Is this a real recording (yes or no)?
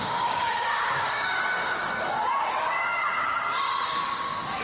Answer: no